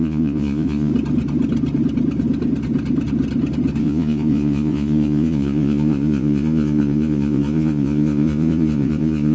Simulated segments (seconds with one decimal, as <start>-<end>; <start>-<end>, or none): 0.0-0.9; 3.8-9.3